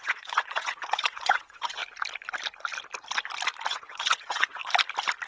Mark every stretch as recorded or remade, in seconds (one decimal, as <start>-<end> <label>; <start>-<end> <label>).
0.0-1.8 remade; 1.8-3.7 recorded; 3.7-4.6 remade; 4.6-5.3 recorded